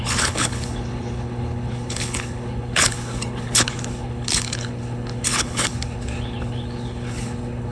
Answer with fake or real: fake